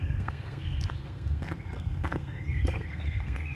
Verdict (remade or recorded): remade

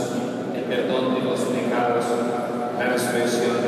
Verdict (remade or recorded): recorded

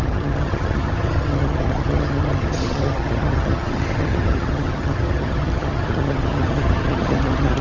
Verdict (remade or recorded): remade